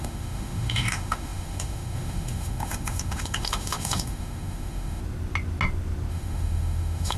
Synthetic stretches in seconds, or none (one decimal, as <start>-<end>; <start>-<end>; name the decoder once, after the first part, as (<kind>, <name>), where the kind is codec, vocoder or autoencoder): 0.0-5.0 (autoencoder, DAC-VAE); 6.1-7.2